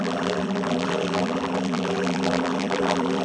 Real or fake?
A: fake